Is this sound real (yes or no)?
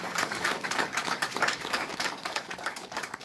no